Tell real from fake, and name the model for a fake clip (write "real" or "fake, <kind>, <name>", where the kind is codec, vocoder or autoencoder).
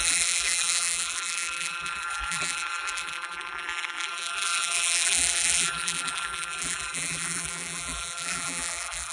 fake, vocoder, BigVGAN v2